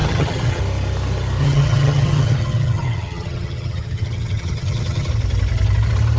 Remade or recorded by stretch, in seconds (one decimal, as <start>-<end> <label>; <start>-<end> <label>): 0.0-0.6 remade; 0.6-1.4 recorded; 1.4-5.1 remade; 5.1-6.2 recorded